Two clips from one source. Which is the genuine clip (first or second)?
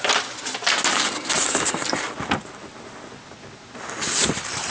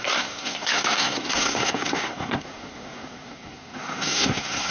first